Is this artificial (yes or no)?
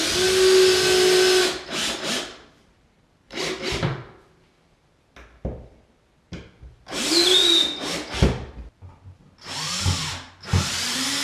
no